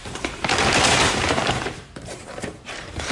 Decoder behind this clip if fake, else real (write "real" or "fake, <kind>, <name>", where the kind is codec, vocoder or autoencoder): fake, vocoder, BigVGAN v2